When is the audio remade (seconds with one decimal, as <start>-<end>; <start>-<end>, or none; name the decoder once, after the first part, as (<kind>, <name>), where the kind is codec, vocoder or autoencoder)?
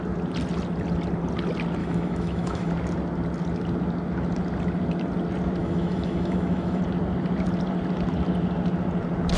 1.8-2.7 (autoencoder, DAC-VAE); 5.6-6.8